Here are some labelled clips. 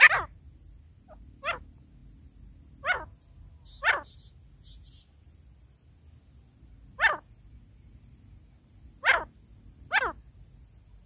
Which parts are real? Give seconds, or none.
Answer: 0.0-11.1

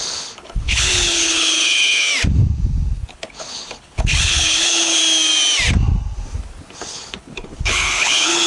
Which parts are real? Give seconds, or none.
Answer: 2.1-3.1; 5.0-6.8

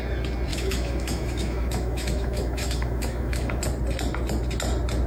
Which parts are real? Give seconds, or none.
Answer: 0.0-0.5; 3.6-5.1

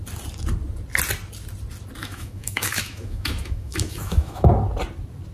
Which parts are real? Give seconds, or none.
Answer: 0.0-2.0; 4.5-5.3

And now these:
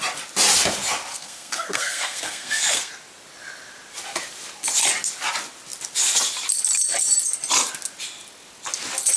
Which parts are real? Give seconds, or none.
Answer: 0.0-1.1; 2.9-9.2

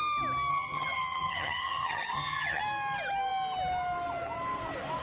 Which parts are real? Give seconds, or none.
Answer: 0.0-0.5; 2.6-5.0

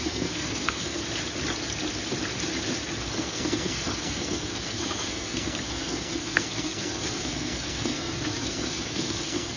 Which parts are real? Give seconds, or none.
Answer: 1.0-3.0